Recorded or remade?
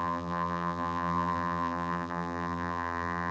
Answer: remade